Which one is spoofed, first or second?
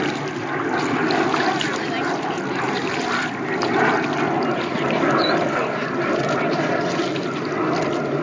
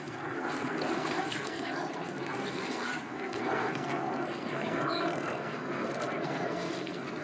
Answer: second